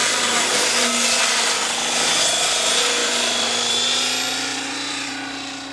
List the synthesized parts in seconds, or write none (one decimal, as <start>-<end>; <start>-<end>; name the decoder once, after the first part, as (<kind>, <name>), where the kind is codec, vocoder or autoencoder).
3.0-3.7 (vocoder, BigVGAN v2); 4.5-5.1